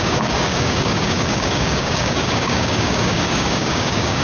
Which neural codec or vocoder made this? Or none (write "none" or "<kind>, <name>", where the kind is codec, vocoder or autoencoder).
codec, DAC